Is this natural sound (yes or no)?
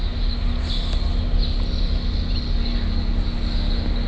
yes